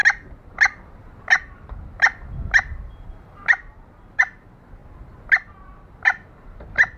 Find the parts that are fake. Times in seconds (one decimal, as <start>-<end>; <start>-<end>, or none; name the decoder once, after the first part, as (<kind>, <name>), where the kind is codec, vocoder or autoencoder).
none